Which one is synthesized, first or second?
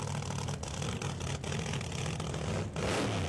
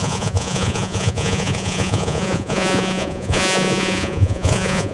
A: second